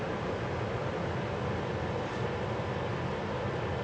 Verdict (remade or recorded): recorded